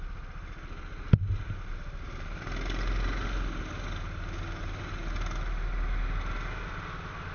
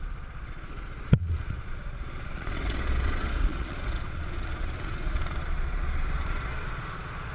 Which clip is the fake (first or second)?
second